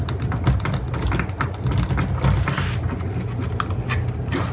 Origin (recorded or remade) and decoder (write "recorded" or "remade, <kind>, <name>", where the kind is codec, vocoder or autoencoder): recorded